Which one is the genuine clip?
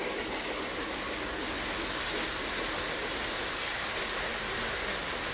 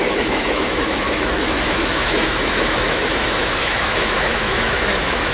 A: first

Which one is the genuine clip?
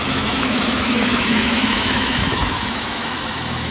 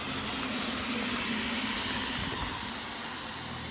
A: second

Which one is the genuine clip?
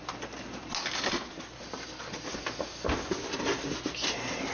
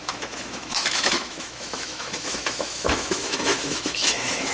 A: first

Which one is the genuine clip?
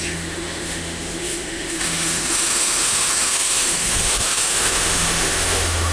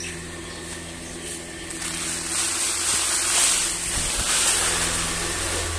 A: second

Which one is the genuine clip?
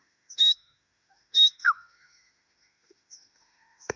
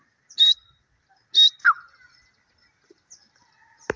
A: second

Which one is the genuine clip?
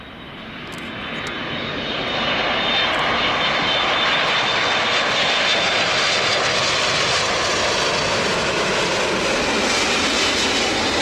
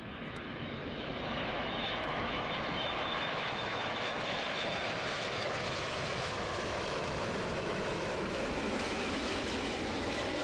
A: first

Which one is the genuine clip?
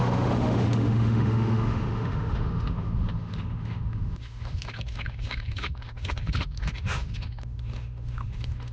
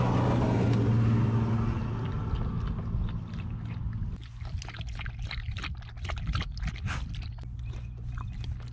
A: second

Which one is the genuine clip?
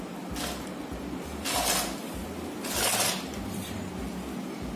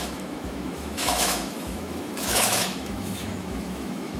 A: first